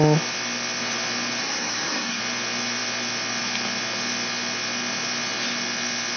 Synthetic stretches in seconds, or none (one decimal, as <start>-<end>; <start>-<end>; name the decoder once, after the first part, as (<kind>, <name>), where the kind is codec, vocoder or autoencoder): 1.4-2.2 (codec, SNAC)